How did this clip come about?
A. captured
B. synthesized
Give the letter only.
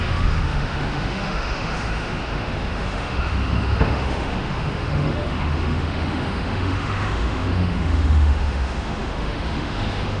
B